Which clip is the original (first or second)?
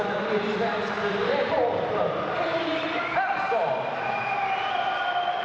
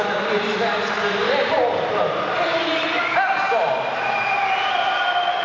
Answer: second